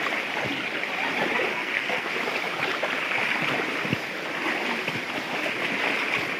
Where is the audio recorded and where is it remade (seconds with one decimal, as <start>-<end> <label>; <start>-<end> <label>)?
0.0-1.5 recorded; 1.5-2.1 remade; 2.1-6.4 recorded